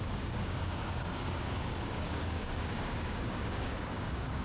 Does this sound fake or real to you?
fake